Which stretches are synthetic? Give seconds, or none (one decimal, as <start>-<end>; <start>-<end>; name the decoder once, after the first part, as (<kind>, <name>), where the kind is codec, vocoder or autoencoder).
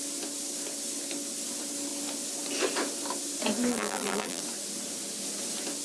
3.7-4.4 (vocoder, BigVGAN v2)